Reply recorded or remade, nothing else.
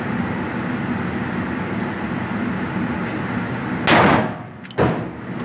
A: recorded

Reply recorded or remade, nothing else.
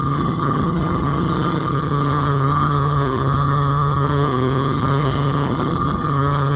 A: remade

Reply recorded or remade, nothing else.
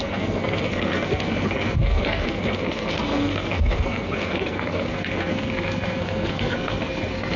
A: remade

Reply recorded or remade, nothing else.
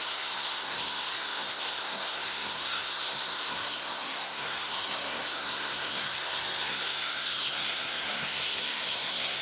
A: remade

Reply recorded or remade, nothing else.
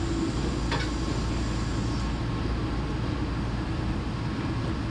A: recorded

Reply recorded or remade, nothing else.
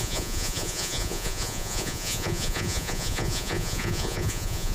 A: remade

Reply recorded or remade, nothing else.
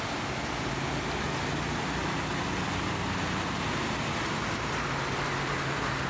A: recorded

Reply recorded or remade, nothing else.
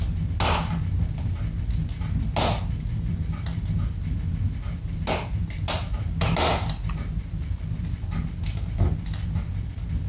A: recorded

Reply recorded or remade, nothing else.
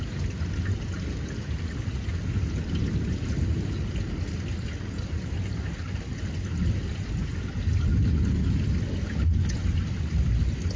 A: recorded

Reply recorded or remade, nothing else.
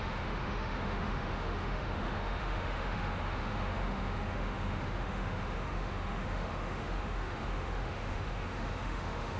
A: remade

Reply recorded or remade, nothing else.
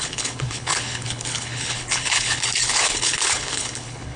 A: remade